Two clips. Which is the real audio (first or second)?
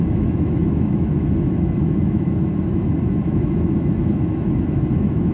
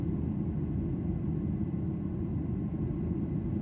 second